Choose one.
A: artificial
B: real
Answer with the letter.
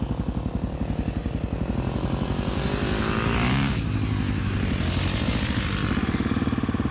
B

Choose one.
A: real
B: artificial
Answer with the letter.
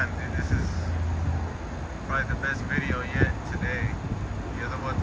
A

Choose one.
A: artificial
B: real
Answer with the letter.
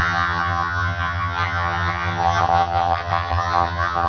A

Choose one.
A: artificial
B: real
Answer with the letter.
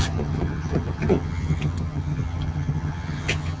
A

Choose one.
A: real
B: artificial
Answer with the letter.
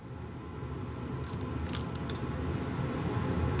A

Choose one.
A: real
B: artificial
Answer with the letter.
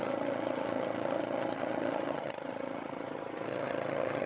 B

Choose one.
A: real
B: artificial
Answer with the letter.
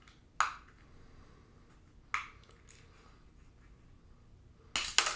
A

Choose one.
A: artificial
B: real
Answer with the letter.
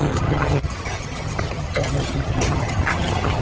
A